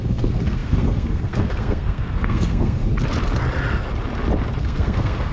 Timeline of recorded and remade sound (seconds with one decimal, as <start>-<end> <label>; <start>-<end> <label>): 0.0-2.9 remade; 2.9-4.6 recorded; 4.6-5.3 remade

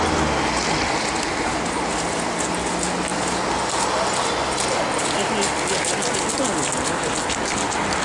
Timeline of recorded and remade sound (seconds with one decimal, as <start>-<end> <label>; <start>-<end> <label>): 0.0-8.0 recorded

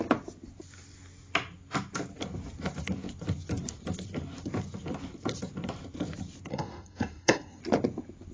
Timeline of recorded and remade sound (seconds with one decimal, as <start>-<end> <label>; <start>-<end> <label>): 0.0-6.5 recorded; 6.5-7.6 remade; 7.6-8.3 recorded

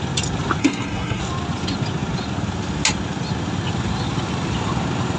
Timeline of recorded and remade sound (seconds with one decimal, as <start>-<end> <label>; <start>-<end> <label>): 0.0-0.6 recorded; 0.6-1.2 remade; 1.2-5.2 recorded

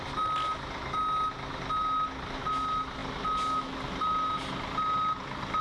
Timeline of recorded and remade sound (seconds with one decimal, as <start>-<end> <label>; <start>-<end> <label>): 0.0-5.6 recorded